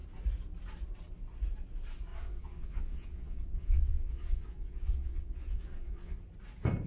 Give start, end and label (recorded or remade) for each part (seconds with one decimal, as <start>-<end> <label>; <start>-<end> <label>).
0.0-2.1 recorded; 2.1-6.2 remade; 6.2-6.9 recorded